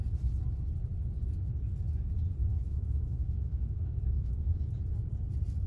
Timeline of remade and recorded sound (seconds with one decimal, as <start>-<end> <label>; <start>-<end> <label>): 0.0-2.5 recorded; 2.5-4.6 remade; 4.6-5.7 recorded